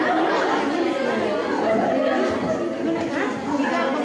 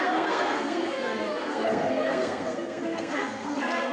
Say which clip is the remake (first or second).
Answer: second